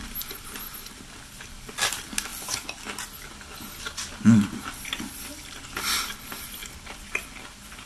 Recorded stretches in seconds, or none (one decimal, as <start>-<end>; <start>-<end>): 0.0-6.6; 7.2-7.9